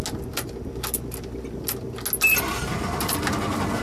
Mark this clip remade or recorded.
recorded